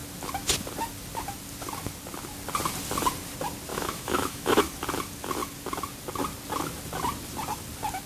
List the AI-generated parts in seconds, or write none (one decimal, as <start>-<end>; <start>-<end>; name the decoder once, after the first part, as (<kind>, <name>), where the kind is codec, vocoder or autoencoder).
3.7-4.6 (autoencoder, DAC-VAE)